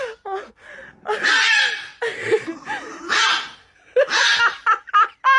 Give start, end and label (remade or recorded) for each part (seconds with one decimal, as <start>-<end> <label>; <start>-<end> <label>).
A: 0.0-2.2 recorded; 2.2-3.4 remade; 3.4-5.4 recorded